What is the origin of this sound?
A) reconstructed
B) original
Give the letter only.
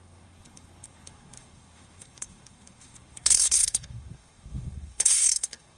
A